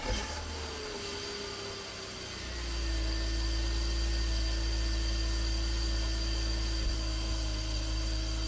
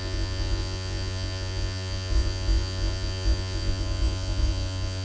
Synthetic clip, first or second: second